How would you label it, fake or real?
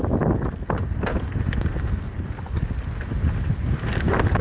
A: real